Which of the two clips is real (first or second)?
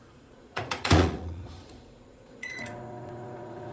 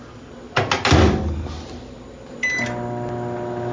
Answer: second